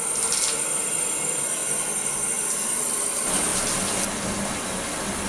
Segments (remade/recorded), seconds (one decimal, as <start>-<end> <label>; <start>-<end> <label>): 0.0-5.3 recorded